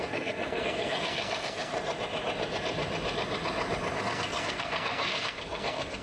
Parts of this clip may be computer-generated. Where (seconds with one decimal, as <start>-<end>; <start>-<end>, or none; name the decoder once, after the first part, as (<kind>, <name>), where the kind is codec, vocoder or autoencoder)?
0.0-1.7 (codec, SNAC); 4.0-6.0